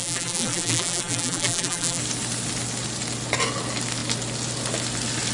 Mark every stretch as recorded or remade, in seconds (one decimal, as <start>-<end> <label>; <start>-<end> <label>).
0.0-2.0 remade; 2.0-5.3 recorded